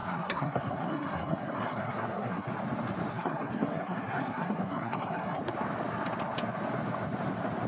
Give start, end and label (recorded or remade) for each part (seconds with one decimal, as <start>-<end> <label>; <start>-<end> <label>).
0.0-2.5 remade; 2.5-3.1 recorded; 3.1-5.4 remade; 5.4-7.7 recorded